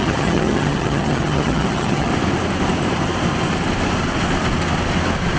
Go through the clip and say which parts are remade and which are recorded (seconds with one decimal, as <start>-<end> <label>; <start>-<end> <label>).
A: 0.0-2.1 remade; 2.1-5.4 recorded